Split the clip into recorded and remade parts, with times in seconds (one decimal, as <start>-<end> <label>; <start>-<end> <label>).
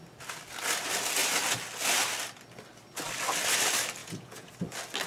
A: 0.0-4.0 recorded; 4.0-4.5 remade; 4.5-5.1 recorded